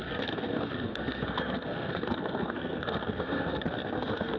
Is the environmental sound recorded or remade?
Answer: remade